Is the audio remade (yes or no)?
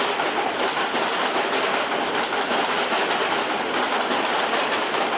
no